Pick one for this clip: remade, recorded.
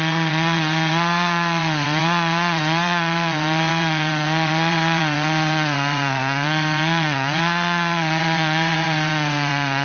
remade